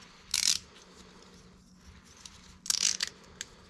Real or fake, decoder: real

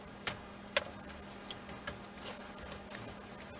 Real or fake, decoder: real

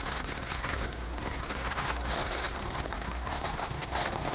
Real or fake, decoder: fake, codec, SNAC